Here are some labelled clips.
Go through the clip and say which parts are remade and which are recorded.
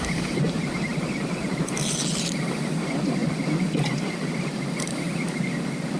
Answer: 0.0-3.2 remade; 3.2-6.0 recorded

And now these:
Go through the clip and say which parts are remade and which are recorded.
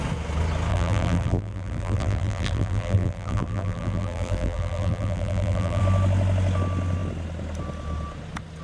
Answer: 0.0-0.7 recorded; 0.7-5.8 remade; 5.8-8.6 recorded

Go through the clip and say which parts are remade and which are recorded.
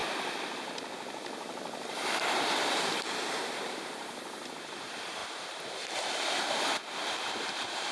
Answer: 0.0-7.9 remade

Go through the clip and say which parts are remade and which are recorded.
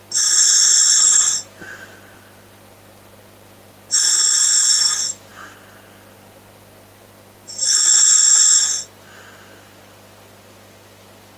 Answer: 0.0-11.4 recorded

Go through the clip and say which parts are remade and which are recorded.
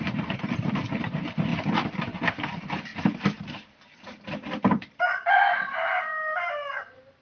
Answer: 0.0-7.2 recorded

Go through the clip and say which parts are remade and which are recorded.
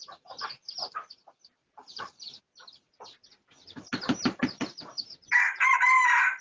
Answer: 0.0-1.2 remade; 1.2-1.6 recorded; 1.6-2.4 remade; 2.4-6.4 recorded